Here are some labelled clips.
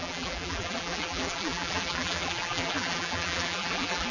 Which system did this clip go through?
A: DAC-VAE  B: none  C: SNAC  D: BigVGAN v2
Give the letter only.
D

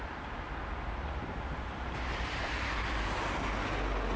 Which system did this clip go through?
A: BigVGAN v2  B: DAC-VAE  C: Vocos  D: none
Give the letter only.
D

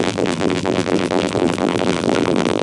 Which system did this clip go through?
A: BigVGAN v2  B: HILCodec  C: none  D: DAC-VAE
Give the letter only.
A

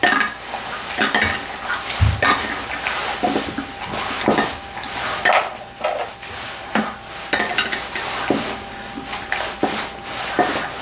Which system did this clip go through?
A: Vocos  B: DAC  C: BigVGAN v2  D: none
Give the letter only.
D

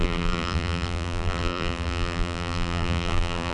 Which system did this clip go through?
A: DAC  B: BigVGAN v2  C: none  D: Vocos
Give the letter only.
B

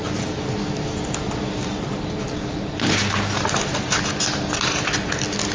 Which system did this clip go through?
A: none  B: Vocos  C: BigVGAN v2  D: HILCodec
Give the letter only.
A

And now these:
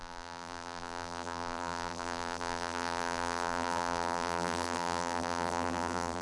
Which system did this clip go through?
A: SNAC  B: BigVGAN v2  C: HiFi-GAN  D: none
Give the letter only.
B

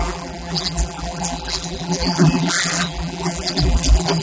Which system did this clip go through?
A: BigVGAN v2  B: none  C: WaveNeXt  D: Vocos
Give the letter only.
A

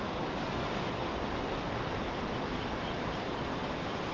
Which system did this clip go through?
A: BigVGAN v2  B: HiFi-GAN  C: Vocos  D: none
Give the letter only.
D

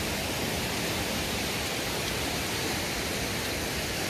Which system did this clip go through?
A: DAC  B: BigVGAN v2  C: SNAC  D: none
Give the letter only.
B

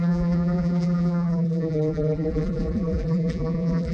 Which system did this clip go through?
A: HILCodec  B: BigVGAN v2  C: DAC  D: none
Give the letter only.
B